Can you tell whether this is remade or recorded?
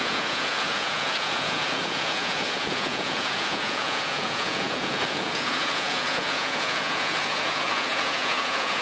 remade